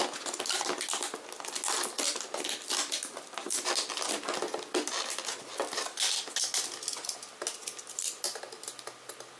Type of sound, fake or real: real